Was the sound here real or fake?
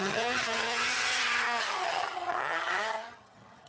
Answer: fake